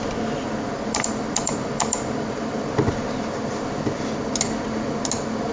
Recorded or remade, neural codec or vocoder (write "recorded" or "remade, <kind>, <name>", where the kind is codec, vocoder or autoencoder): recorded